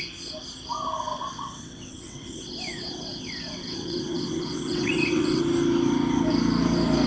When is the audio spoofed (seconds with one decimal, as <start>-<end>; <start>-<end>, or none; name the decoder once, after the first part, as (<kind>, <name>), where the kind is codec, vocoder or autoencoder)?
1.1-5.4 (vocoder, WaveNeXt)